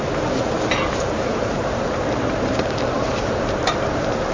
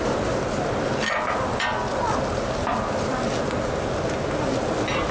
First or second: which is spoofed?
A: first